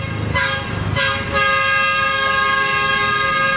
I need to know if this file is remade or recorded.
recorded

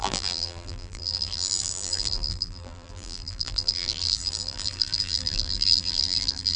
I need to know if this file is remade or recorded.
remade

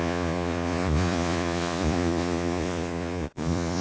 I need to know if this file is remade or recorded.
remade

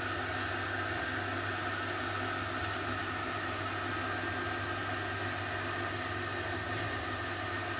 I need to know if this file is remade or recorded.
recorded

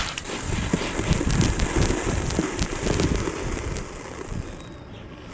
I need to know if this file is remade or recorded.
recorded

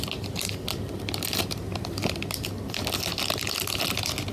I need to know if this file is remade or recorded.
recorded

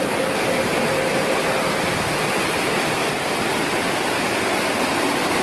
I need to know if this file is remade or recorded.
recorded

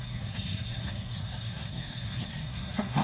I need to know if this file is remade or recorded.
remade